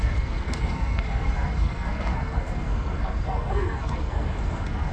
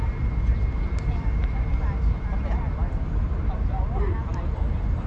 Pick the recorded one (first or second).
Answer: second